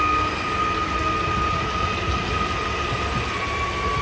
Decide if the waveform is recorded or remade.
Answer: recorded